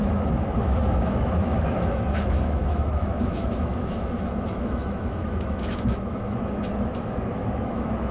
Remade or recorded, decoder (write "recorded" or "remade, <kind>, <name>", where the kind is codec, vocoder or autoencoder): remade, autoencoder, DAC-VAE